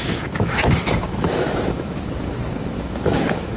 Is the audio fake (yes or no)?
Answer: yes